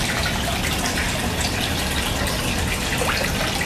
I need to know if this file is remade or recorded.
recorded